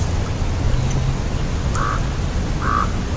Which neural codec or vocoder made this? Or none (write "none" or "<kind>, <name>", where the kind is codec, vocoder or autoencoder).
none